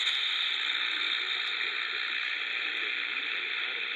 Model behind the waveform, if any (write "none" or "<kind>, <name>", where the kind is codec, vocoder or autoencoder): vocoder, BigVGAN v2